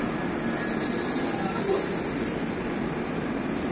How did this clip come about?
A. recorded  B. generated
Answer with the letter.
A